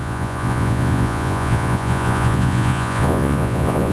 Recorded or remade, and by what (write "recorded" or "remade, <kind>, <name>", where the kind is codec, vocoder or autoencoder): remade, vocoder, Vocos